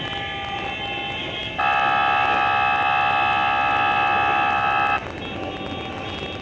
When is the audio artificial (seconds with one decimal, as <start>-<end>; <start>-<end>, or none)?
none

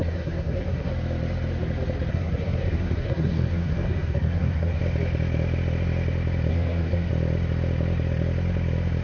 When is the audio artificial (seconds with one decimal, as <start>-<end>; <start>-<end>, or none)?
0.0-0.9; 2.1-4.8; 6.5-7.1

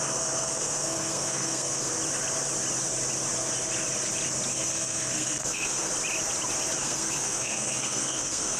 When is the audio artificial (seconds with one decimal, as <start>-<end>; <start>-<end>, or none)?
0.0-1.9; 4.5-5.9; 6.8-8.6